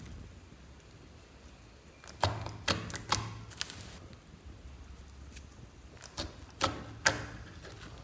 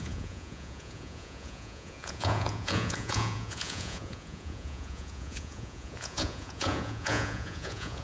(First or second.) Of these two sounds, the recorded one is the first